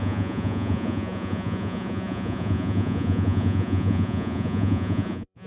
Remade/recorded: remade